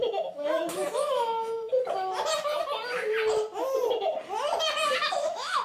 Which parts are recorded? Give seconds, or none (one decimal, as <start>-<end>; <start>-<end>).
1.7-5.1